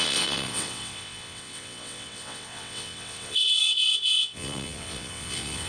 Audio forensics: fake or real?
fake